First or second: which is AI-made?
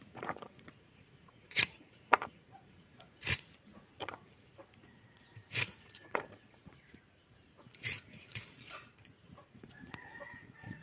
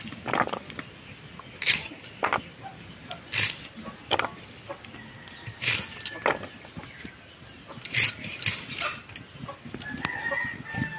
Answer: first